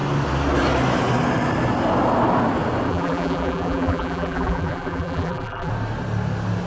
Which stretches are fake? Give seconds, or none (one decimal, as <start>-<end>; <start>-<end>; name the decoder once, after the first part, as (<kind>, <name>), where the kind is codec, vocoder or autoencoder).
2.9-5.7 (vocoder, BigVGAN v2)

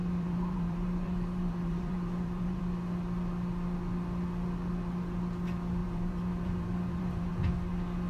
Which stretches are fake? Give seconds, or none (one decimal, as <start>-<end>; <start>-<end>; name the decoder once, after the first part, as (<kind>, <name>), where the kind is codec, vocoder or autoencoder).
0.0-2.6 (vocoder, BigVGAN v2); 5.8-7.3

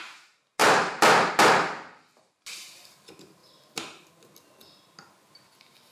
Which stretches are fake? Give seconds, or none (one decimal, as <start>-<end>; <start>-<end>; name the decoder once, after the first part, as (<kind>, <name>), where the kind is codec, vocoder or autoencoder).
0.6-1.3 (vocoder, BigVGAN v2); 3.4-4.1

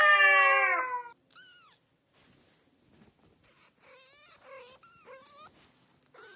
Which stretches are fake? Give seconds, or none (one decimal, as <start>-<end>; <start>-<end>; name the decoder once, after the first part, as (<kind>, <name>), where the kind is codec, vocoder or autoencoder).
none

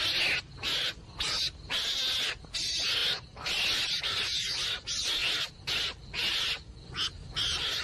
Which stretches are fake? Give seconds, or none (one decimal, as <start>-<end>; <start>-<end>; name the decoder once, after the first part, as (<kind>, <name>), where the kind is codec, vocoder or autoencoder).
none